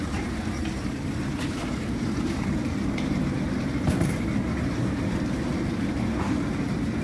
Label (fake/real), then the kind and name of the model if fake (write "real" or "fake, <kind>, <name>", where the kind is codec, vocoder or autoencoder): fake, vocoder, BigVGAN v2